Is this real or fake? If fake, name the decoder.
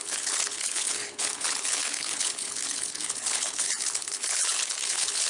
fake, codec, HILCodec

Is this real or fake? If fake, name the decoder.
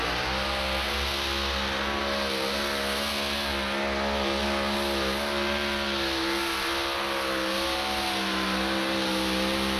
real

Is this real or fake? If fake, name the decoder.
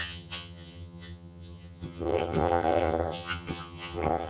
fake, vocoder, HiFi-GAN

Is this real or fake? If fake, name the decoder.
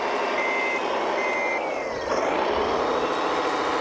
real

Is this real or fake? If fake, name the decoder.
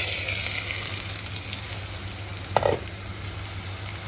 real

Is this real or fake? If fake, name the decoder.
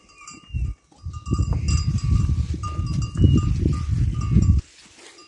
real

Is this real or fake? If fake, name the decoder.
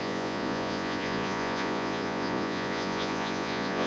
fake, vocoder, Vocos